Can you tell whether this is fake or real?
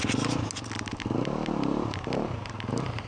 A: real